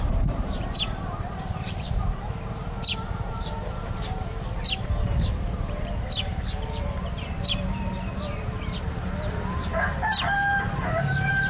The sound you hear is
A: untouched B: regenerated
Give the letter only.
B